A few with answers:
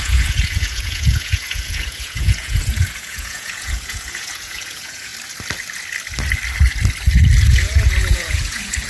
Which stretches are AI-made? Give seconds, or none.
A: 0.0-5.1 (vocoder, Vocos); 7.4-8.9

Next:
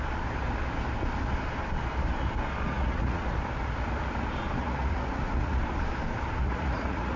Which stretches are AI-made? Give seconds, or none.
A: 2.7-3.2 (vocoder, Vocos); 4.6-5.6; 6.4-7.2

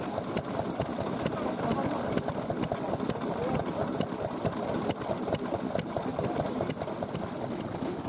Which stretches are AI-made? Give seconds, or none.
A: none

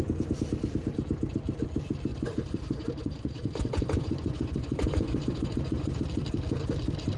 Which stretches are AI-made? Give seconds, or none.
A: 2.1-6.0 (vocoder, Vocos)